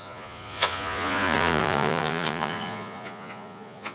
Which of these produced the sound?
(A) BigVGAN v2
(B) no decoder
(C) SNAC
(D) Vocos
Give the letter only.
D